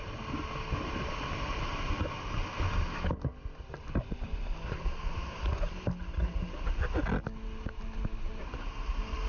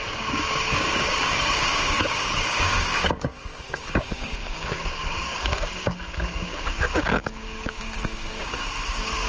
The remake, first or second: second